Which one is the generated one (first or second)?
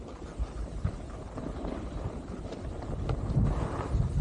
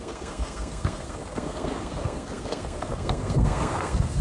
second